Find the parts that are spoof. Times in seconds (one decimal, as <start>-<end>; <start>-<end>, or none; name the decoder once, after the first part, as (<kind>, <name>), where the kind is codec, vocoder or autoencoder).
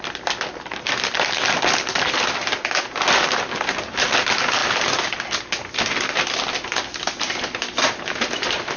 none